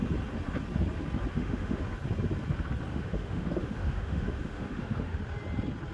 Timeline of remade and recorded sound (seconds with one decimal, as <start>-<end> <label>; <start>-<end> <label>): 0.0-1.3 recorded; 1.3-1.8 remade; 1.8-2.9 recorded; 2.9-5.2 remade; 5.2-5.9 recorded